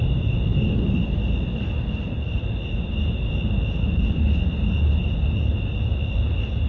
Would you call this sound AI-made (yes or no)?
no